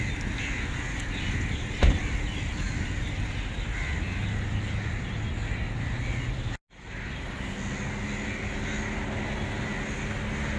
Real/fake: real